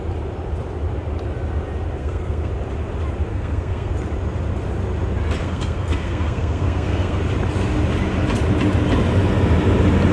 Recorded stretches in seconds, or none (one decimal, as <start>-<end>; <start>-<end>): 0.0-2.0; 2.5-3.3; 3.9-5.4; 7.2-10.1